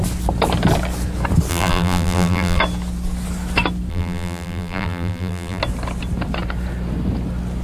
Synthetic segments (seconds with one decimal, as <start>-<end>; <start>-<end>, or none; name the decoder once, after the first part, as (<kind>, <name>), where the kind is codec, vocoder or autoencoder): 1.5-2.6 (vocoder, BigVGAN v2); 3.9-5.6